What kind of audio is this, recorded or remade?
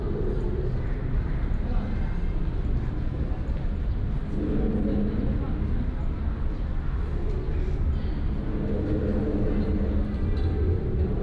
recorded